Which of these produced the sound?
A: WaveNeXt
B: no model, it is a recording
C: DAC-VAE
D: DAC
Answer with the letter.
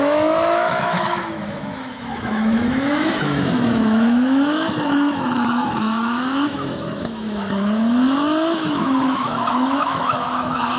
C